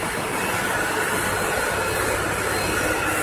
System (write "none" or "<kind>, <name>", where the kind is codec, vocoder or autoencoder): none